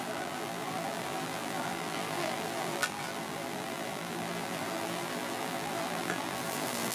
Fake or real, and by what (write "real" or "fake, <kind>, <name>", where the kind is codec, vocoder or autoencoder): fake, vocoder, BigVGAN v2